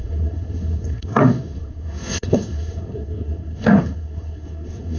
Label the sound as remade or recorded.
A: remade